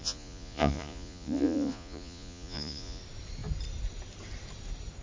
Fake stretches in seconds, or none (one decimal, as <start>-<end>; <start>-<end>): 0.0-3.0